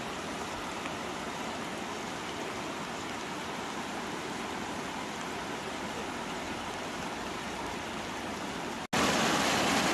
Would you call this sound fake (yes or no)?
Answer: no